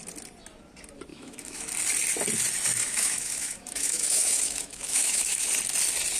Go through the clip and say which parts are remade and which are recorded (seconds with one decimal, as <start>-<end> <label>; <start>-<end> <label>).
0.0-1.1 recorded; 1.1-1.7 remade; 1.7-2.7 recorded; 2.7-5.5 remade; 5.5-6.2 recorded